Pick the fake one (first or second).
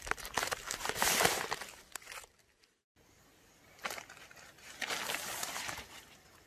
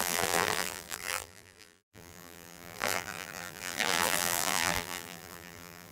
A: second